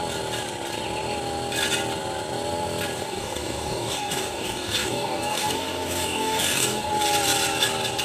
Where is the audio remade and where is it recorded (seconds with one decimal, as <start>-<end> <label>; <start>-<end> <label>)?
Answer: 0.0-3.0 recorded; 3.0-6.9 remade; 6.9-8.0 recorded